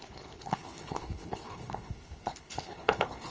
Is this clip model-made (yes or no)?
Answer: yes